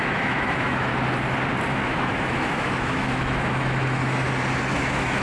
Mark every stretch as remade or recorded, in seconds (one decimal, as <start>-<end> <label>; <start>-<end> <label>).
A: 0.0-0.9 remade; 0.9-1.7 recorded; 1.7-4.0 remade; 4.0-4.7 recorded; 4.7-5.2 remade

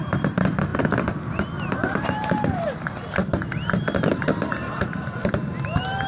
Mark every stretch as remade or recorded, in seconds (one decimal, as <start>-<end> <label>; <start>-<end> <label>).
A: 0.0-0.7 remade; 0.7-1.7 recorded; 1.7-3.2 remade; 3.2-4.2 recorded; 4.2-6.1 remade

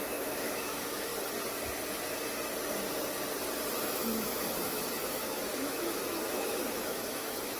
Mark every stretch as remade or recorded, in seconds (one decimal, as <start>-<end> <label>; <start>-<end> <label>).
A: 0.0-1.1 remade; 1.1-3.8 recorded; 3.8-7.6 remade

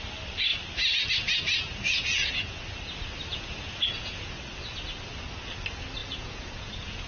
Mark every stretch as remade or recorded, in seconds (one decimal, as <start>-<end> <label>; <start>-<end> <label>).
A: 0.0-1.6 recorded; 1.6-2.6 remade; 2.6-3.3 recorded; 3.3-4.4 remade; 4.4-6.0 recorded; 6.0-7.1 remade